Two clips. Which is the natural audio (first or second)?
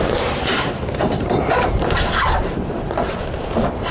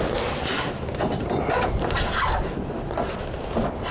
second